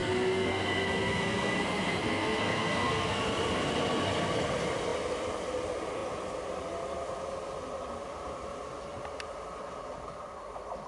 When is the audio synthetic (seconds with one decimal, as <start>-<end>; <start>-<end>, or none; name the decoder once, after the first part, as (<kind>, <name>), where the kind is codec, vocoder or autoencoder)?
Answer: 0.0-3.2 (codec, SNAC)